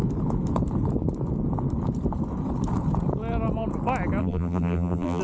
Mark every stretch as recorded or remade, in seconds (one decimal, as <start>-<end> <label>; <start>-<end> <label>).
0.0-4.2 recorded; 4.2-5.2 remade